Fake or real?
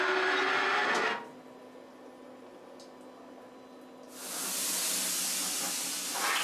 real